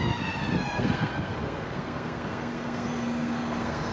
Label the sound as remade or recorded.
remade